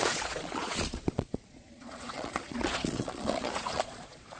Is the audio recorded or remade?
remade